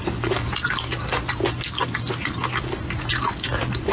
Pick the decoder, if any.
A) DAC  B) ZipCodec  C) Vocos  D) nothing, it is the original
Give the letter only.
D